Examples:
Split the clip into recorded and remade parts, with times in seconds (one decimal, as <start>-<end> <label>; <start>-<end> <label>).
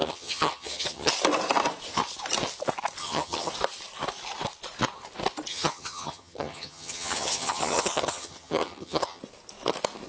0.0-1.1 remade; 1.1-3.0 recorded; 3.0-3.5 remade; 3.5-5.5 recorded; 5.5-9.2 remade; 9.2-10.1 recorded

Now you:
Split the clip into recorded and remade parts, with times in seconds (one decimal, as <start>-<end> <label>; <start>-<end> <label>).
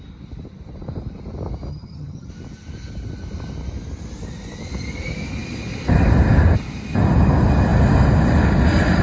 0.0-1.7 recorded; 1.7-2.3 remade; 2.3-9.0 recorded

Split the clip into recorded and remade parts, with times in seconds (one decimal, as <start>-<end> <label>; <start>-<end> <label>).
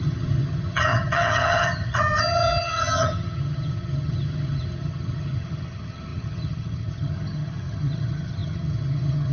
0.0-9.3 remade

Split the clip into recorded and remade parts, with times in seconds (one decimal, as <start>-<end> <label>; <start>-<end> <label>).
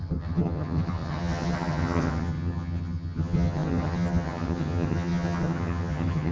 0.0-6.3 remade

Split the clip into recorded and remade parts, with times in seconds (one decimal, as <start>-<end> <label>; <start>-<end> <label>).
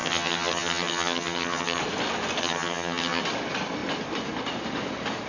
0.0-1.8 remade; 1.8-2.4 recorded; 2.4-3.2 remade; 3.2-5.3 recorded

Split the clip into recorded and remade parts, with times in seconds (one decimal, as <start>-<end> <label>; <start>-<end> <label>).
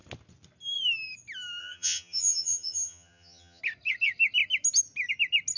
0.0-1.6 recorded; 1.6-3.6 remade; 3.6-5.6 recorded